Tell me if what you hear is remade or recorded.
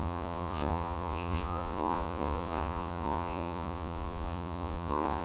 remade